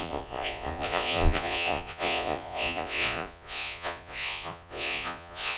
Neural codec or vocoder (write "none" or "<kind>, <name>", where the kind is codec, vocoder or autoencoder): vocoder, Vocos